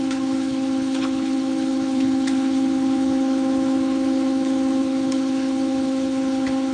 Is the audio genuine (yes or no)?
no